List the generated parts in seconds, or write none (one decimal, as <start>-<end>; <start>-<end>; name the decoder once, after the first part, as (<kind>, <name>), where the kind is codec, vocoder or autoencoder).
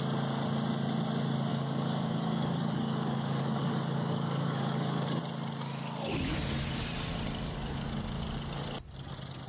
1.5-5.2 (codec, DAC)